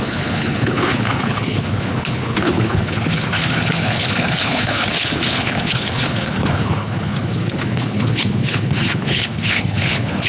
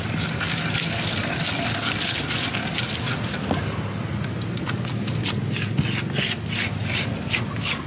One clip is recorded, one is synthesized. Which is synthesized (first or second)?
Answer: first